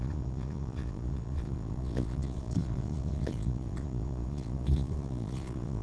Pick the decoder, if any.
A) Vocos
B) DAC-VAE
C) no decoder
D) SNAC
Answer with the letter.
A